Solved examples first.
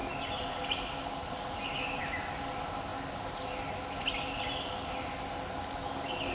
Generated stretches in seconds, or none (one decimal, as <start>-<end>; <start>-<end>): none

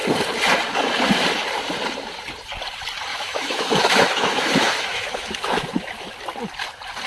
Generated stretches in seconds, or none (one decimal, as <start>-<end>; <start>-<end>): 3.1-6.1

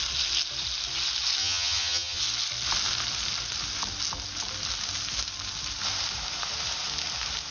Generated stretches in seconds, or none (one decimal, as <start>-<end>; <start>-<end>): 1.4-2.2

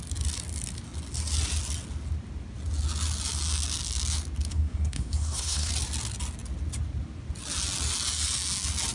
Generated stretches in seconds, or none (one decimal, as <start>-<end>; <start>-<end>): 4.5-5.7

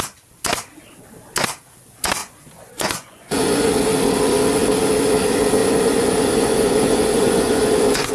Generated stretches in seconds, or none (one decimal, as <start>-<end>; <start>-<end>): 2.2-3.7; 5.6-8.1